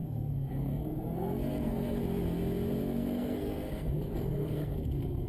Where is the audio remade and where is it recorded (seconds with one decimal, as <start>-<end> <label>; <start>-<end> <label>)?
0.0-2.0 remade; 2.0-2.8 recorded; 2.8-5.3 remade